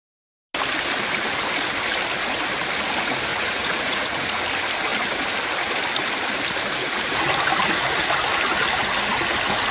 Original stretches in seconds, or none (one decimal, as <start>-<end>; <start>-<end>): 0.0-3.3; 4.4-9.7